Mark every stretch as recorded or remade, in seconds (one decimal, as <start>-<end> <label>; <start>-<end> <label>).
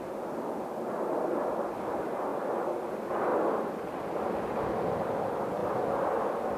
0.0-6.6 recorded